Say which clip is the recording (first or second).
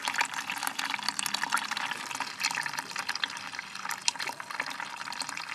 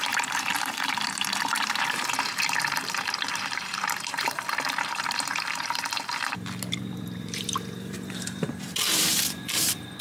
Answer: first